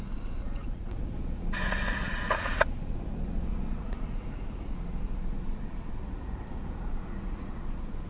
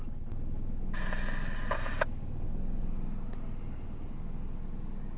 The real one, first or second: second